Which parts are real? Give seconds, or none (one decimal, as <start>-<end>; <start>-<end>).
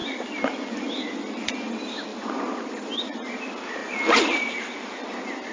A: 0.0-5.5